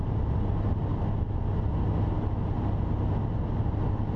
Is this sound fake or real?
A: real